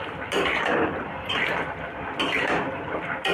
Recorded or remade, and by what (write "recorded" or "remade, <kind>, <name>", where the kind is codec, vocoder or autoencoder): recorded